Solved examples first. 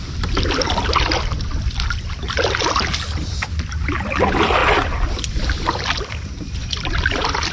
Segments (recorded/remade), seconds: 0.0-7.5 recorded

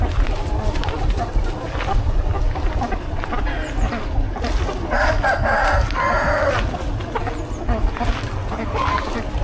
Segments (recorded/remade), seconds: 0.0-9.4 recorded